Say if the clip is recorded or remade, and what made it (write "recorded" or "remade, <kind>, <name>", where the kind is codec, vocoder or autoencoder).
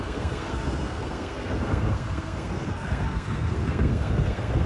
remade, codec, SNAC